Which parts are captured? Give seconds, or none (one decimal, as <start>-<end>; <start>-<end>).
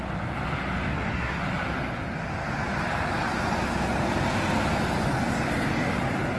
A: 0.0-0.9; 1.4-6.4